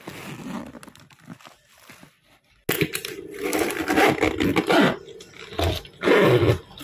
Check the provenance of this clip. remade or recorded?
recorded